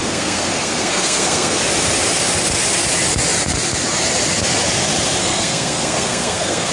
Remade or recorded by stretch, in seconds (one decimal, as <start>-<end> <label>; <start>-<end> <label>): 0.0-1.6 remade; 1.6-5.2 recorded; 5.2-6.7 remade